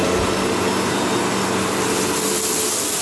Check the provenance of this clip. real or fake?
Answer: real